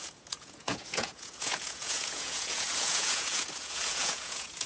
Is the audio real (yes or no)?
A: no